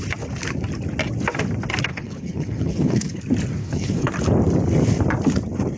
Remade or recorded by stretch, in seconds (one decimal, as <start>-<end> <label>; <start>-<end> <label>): 0.0-1.9 recorded; 1.9-3.2 remade; 3.2-3.6 recorded; 3.6-4.1 remade; 4.1-5.8 recorded